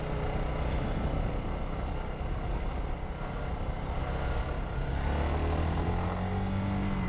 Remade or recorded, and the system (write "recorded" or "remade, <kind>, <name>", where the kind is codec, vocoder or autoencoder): recorded